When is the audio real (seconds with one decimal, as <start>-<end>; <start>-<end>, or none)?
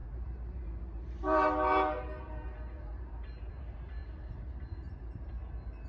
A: 3.5-4.0; 5.3-5.9